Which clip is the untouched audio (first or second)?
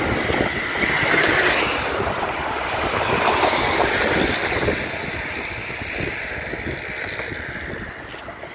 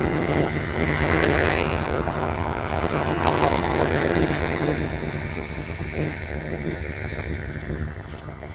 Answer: first